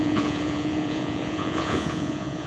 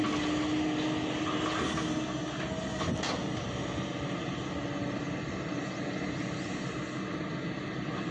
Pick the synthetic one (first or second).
first